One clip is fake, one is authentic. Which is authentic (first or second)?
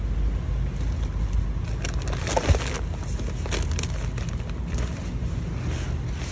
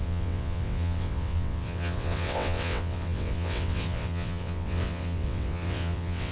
first